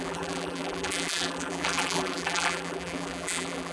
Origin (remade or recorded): remade